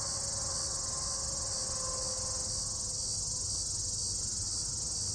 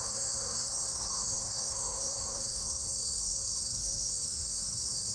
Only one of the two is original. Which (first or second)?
first